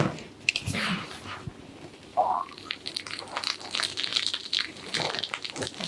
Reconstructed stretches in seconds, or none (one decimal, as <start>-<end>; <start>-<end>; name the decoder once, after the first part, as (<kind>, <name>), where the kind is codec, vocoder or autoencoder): 2.1-3.2 (vocoder, BigVGAN v2)